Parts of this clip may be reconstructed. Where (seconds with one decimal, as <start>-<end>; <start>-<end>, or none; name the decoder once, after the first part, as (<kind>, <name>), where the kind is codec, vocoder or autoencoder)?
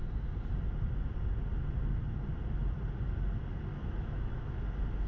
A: 3.7-4.6 (autoencoder, DAC-VAE)